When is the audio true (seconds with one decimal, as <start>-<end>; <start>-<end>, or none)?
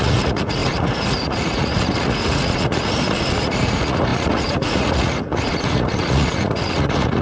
none